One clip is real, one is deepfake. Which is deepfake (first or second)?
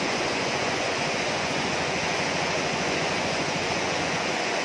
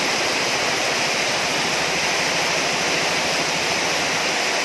first